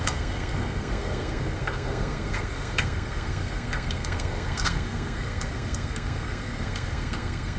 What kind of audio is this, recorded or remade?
remade